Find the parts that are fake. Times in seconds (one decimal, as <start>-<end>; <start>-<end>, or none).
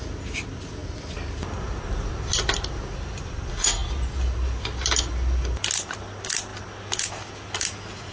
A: none